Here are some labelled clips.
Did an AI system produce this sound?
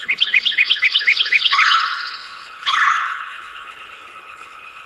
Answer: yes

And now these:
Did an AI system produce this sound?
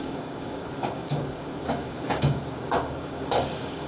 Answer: yes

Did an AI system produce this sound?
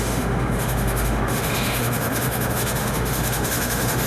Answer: yes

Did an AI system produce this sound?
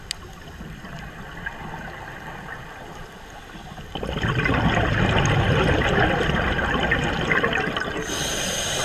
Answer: no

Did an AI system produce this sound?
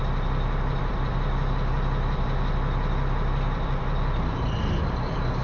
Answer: yes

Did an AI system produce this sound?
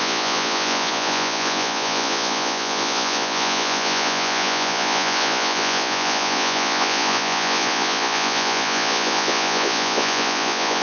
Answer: yes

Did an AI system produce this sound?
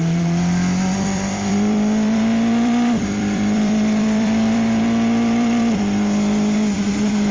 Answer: yes